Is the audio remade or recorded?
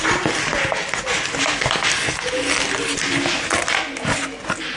recorded